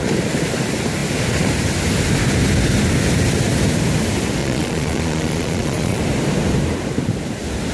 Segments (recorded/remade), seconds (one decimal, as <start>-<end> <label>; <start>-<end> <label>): 0.0-4.4 recorded; 4.4-6.0 remade; 6.0-7.7 recorded